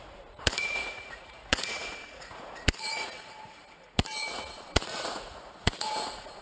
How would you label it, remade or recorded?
remade